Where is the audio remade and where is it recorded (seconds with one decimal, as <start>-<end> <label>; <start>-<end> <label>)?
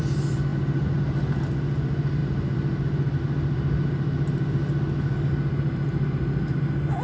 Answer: 0.0-7.0 recorded